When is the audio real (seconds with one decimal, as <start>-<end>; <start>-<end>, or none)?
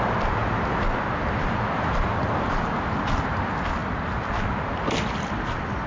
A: 0.0-5.9